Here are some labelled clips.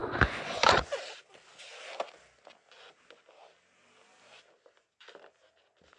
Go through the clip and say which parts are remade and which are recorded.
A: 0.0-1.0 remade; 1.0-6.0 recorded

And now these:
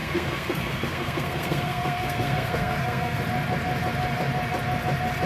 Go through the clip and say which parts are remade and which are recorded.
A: 0.0-3.2 remade; 3.2-5.3 recorded

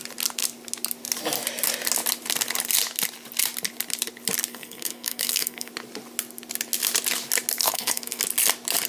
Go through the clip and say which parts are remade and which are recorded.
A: 0.0-4.5 recorded; 4.5-5.7 remade; 5.7-7.6 recorded; 7.6-8.2 remade; 8.2-8.9 recorded

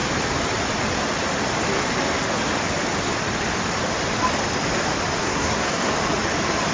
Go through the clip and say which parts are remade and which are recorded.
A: 0.0-5.2 recorded; 5.2-5.9 remade; 5.9-6.7 recorded